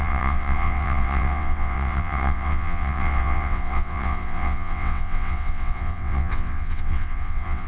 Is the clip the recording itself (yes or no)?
no